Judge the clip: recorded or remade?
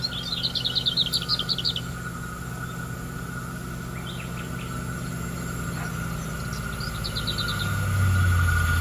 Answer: recorded